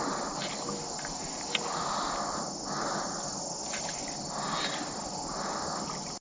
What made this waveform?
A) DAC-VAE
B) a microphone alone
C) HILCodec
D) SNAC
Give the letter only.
B